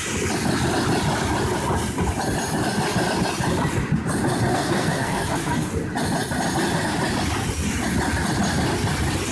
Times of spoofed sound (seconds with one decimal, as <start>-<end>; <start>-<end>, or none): 4.5-5.7